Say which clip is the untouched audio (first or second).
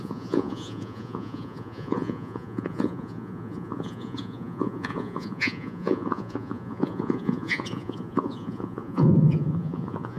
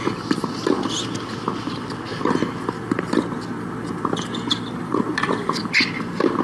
second